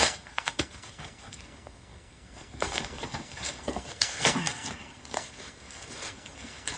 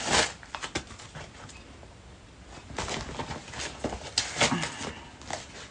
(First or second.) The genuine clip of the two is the second